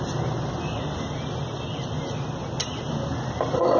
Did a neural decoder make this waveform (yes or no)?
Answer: no